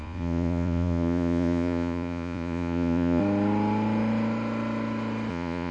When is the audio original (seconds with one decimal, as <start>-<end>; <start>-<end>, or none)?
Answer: 3.2-5.3